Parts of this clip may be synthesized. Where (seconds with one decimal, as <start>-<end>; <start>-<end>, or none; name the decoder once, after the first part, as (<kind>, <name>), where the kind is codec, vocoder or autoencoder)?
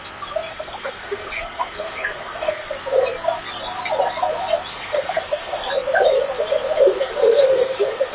0.5-2.7 (codec, SNAC); 4.7-5.7; 7.0-8.1